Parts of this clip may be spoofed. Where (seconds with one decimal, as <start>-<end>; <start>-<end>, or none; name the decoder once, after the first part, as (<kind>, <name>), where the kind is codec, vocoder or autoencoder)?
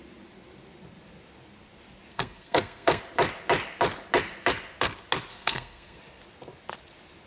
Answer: 2.1-3.0 (codec, SNAC); 5.3-6.0